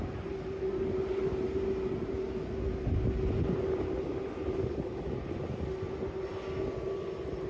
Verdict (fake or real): real